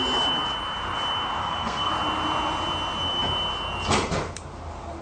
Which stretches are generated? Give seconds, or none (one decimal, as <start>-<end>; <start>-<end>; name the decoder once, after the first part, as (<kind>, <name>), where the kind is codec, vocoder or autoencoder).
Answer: 1.4-1.9 (codec, SNAC)